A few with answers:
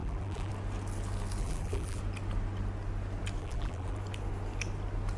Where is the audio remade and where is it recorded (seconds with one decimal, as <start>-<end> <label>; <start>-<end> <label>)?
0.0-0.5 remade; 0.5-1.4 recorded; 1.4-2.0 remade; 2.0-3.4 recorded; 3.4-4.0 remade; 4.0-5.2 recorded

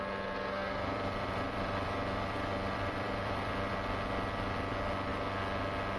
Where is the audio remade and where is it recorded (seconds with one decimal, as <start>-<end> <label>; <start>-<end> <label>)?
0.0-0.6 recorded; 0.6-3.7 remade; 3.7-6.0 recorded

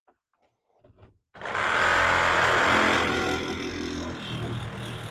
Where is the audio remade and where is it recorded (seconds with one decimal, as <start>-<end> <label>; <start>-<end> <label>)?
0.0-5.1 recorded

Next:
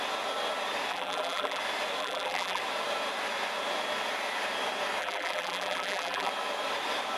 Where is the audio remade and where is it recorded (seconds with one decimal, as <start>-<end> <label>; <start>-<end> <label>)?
0.0-0.9 recorded; 0.9-1.6 remade; 1.6-2.0 recorded; 2.0-2.6 remade; 2.6-5.0 recorded; 5.0-6.3 remade; 6.3-7.2 recorded

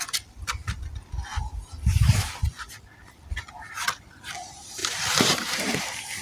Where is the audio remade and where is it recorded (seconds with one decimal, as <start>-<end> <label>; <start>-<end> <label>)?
0.0-1.3 recorded; 1.3-2.3 remade; 2.3-4.8 recorded; 4.8-5.8 remade; 5.8-6.2 recorded

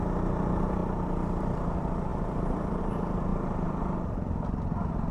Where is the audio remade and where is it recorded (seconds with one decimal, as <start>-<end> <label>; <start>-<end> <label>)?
0.0-0.8 remade; 0.8-1.4 recorded; 1.4-5.1 remade

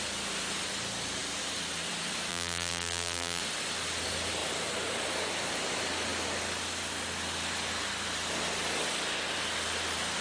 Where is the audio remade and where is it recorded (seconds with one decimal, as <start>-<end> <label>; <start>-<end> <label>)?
0.0-2.3 recorded; 2.3-3.4 remade; 3.4-10.2 recorded

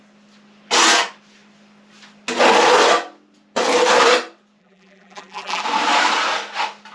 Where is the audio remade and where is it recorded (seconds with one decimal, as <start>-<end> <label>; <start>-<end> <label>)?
0.0-4.6 recorded; 4.6-5.6 remade; 5.6-6.9 recorded